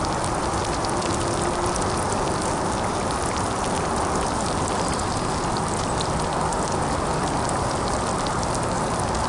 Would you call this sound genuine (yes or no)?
yes